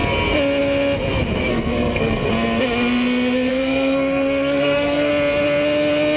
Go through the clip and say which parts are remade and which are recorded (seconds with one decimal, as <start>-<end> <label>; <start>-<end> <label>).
0.0-1.5 recorded; 1.5-2.3 remade; 2.3-3.5 recorded; 3.5-5.1 remade; 5.1-6.2 recorded